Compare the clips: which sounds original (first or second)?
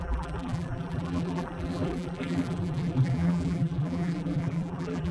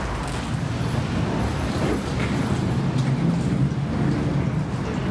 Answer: second